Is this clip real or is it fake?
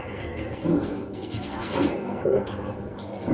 fake